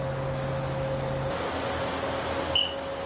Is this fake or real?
real